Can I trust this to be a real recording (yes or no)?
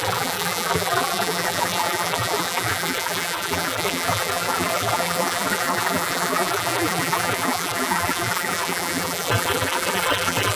no